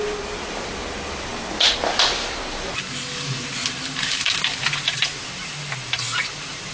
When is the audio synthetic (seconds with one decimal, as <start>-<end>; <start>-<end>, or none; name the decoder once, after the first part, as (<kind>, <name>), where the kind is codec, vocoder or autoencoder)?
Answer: none